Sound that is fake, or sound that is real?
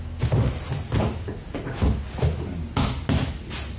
real